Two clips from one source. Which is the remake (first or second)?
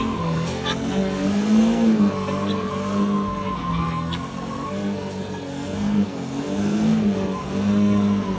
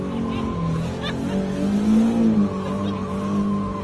first